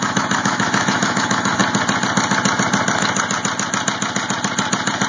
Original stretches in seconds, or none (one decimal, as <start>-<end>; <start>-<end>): 1.6-5.1